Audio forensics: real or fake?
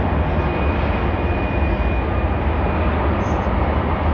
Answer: real